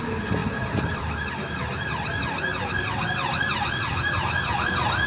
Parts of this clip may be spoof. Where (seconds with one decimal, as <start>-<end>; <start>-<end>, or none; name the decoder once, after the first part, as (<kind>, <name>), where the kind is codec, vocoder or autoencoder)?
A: 0.4-1.3 (vocoder, BigVGAN v2)